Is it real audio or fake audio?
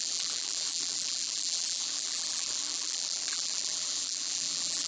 fake